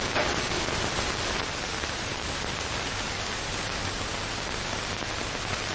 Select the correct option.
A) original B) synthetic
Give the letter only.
A